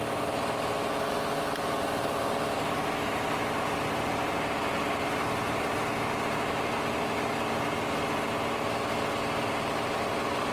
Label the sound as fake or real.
real